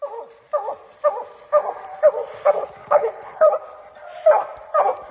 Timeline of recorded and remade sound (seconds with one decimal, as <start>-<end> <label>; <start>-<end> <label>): 0.0-2.8 recorded; 2.8-3.5 remade; 3.5-5.1 recorded

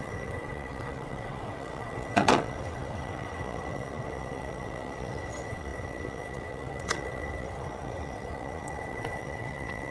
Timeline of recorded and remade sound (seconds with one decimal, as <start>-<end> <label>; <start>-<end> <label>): 0.0-9.9 remade

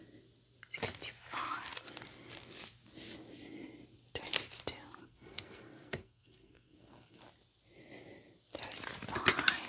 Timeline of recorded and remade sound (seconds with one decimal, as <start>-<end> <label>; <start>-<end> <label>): 0.0-5.0 recorded; 5.0-7.2 remade; 7.2-9.7 recorded

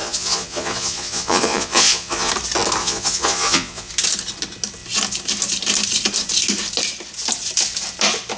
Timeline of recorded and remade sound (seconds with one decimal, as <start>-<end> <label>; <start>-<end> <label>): 0.0-2.3 remade; 2.3-2.8 recorded; 2.8-3.9 remade; 3.9-8.4 recorded

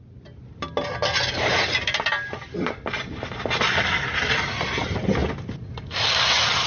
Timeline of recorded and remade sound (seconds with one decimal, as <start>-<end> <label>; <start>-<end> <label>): 0.0-6.7 recorded

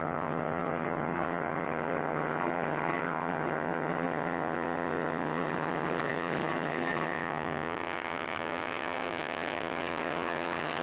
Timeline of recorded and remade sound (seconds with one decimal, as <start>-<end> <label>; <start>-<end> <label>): 0.0-10.8 remade

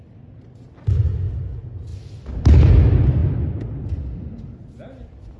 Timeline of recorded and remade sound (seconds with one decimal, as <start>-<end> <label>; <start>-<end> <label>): 0.0-5.4 recorded

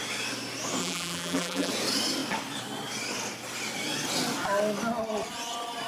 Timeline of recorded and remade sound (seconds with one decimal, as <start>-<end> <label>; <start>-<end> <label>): 0.0-0.8 recorded; 0.8-1.7 remade; 1.7-5.9 recorded